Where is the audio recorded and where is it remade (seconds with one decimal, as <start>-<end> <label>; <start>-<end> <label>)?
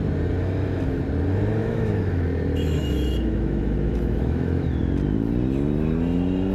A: 0.0-1.6 recorded; 1.6-4.8 remade; 4.8-6.5 recorded